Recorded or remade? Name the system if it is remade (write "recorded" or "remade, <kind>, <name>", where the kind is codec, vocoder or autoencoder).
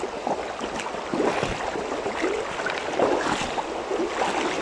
recorded